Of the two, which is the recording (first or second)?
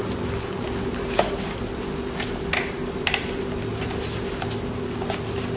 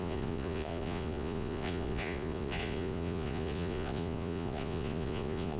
first